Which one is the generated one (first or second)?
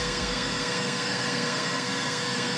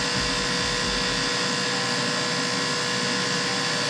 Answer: first